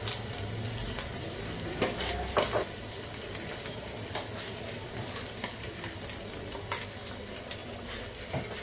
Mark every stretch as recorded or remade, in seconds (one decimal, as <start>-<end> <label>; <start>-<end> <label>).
0.0-8.6 recorded